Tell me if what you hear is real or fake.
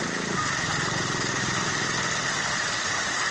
real